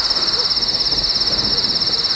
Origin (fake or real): real